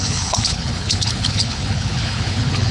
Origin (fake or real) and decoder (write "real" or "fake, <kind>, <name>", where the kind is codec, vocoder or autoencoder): fake, codec, HILCodec